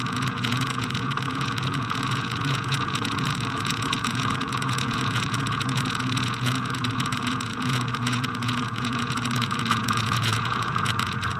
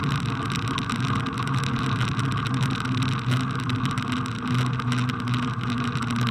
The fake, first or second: first